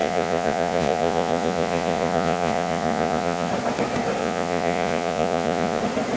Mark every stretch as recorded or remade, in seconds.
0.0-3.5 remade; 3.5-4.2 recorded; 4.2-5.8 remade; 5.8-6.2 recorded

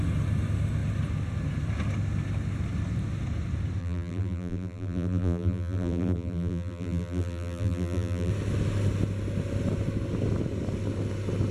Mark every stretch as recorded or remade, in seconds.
0.0-3.8 recorded; 3.8-8.3 remade; 8.3-11.5 recorded